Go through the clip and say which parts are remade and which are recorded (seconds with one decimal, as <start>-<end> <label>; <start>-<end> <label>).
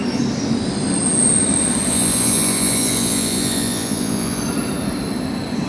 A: 0.0-1.9 recorded; 1.9-4.4 remade; 4.4-5.7 recorded